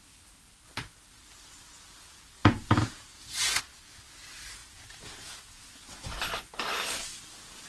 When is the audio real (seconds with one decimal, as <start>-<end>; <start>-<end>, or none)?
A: 0.0-2.4; 3.6-4.6; 6.2-7.7